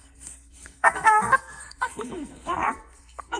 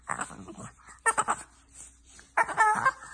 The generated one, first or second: first